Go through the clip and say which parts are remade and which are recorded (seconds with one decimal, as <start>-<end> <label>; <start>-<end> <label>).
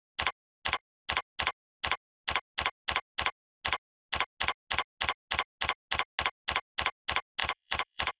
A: 0.0-7.4 recorded; 7.4-8.2 remade